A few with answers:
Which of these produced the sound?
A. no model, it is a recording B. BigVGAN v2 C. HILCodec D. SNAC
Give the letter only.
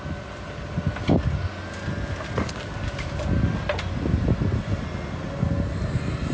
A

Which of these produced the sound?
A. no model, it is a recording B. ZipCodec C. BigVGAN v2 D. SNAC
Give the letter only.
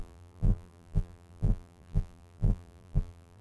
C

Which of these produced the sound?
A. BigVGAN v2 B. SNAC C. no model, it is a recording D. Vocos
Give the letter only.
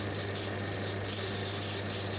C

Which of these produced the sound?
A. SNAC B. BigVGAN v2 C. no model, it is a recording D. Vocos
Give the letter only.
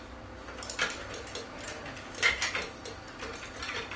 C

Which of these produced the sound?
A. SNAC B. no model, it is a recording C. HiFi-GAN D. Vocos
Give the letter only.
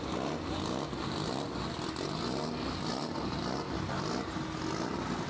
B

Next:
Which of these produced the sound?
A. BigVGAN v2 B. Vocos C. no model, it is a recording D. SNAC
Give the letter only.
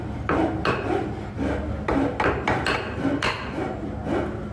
C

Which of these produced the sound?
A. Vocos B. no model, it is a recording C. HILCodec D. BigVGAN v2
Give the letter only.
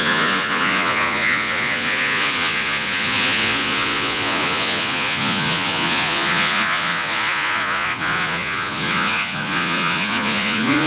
A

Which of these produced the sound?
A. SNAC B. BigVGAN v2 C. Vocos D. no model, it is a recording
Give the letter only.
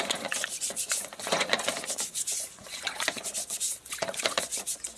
C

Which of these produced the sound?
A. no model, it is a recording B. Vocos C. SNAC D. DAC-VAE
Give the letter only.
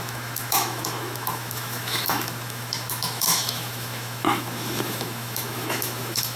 D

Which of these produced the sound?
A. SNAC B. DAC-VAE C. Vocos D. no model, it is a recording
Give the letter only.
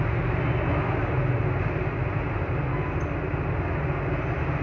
D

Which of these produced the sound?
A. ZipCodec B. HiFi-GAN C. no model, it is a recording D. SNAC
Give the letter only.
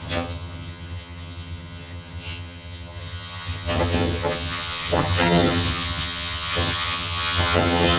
B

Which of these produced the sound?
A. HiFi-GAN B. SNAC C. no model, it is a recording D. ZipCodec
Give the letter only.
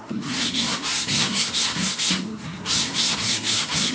B